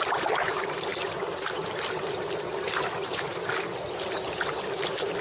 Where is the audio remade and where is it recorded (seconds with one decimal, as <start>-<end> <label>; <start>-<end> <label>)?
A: 0.0-5.2 recorded